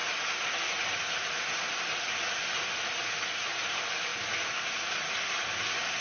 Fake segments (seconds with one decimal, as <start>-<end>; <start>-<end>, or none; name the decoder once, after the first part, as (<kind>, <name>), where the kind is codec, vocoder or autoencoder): none